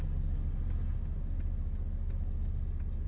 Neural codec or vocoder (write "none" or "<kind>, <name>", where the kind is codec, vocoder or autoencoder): none